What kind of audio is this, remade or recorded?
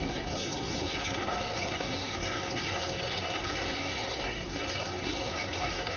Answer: remade